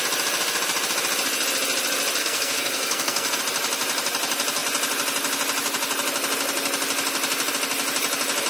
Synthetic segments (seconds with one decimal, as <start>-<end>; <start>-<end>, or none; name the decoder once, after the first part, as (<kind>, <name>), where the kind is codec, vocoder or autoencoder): 2.2-3.4 (codec, SNAC)